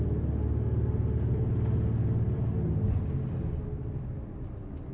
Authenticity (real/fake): real